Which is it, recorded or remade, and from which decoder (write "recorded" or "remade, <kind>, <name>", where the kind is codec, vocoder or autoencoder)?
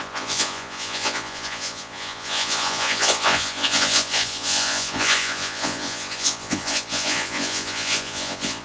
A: remade, vocoder, Vocos